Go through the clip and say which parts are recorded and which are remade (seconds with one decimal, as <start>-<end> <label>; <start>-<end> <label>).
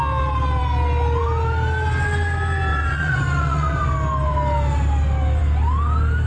0.0-2.7 recorded; 2.7-3.9 remade; 3.9-6.3 recorded